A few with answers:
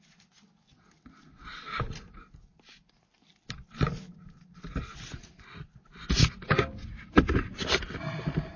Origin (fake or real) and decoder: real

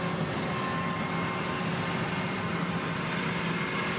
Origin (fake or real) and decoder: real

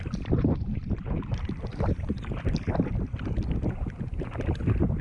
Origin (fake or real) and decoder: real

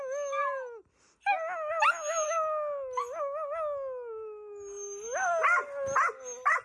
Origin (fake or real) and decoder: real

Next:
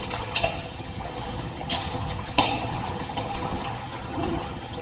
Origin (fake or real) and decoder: fake, vocoder, HiFi-GAN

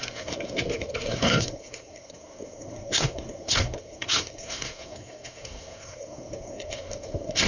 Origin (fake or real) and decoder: fake, codec, SNAC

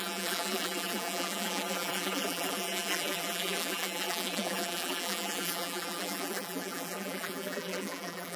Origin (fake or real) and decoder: fake, vocoder, BigVGAN v2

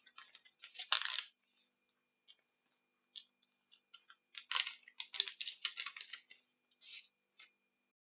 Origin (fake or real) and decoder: real